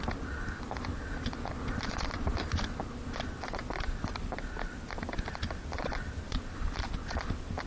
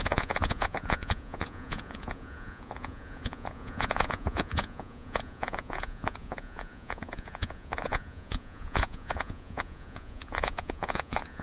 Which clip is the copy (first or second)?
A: second